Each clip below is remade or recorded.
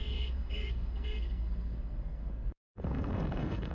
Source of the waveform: remade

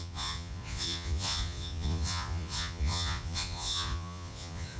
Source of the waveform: remade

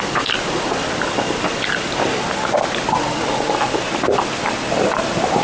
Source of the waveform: recorded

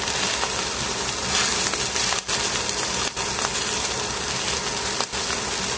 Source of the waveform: recorded